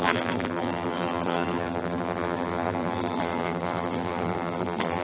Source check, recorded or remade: remade